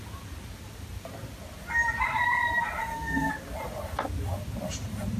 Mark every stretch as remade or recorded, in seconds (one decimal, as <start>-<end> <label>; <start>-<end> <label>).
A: 0.0-2.8 recorded; 2.8-3.3 remade; 3.3-5.2 recorded